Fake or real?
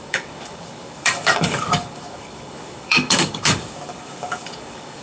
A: fake